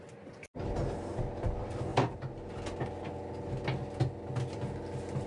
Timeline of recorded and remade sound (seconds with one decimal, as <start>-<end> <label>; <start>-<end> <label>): 0.0-5.3 recorded